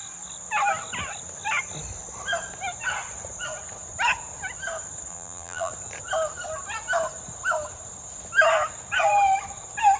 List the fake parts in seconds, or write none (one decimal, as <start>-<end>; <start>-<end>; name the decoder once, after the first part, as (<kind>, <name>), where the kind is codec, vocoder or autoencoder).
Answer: 5.1-5.7 (vocoder, BigVGAN v2)